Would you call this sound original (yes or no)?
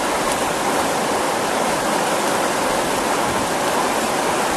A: yes